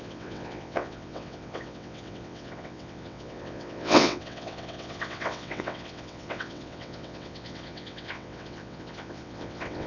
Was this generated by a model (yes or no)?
yes